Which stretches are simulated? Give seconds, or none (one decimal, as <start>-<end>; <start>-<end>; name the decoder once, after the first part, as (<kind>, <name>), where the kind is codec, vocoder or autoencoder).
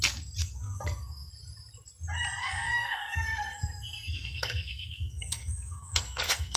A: 0.4-1.3 (codec, SNAC); 2.4-6.6